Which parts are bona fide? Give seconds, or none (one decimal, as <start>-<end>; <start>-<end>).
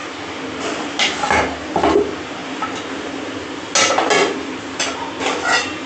0.0-5.9